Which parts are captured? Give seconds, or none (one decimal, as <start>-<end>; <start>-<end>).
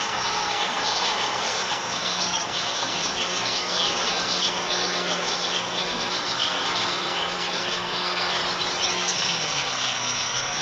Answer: 8.4-8.9